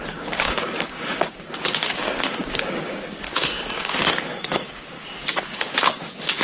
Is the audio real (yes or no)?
no